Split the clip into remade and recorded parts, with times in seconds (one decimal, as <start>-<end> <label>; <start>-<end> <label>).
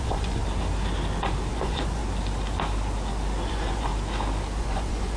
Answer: 0.0-0.4 remade; 0.4-1.5 recorded; 1.5-2.0 remade; 2.0-3.5 recorded; 3.5-3.9 remade; 3.9-4.6 recorded; 4.6-5.2 remade